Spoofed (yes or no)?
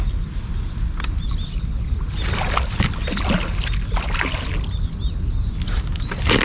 no